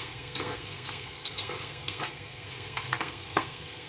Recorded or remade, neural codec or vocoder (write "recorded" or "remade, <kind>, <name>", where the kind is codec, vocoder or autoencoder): remade, codec, SNAC